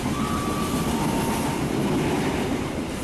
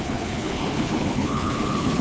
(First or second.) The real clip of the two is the first